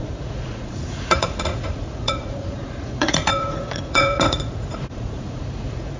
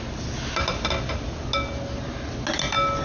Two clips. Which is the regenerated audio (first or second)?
first